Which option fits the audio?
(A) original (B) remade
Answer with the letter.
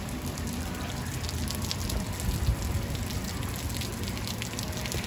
A